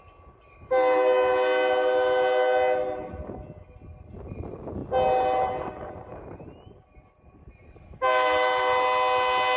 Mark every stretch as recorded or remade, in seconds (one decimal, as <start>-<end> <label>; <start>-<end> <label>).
0.0-9.6 recorded